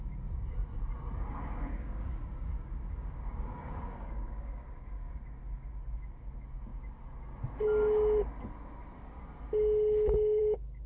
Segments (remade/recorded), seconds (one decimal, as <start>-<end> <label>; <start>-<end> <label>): 0.0-1.7 recorded; 1.7-5.4 remade; 5.4-10.9 recorded